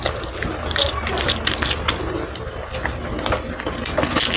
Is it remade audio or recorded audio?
recorded